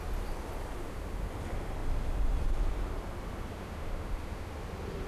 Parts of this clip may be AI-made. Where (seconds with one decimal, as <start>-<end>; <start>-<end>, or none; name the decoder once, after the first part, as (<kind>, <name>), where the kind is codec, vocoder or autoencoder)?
0.8-1.3 (autoencoder, DAC-VAE); 3.5-4.5